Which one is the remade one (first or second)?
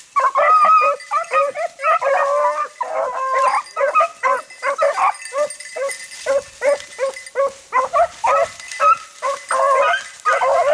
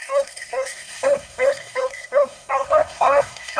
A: second